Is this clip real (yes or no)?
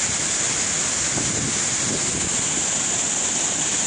yes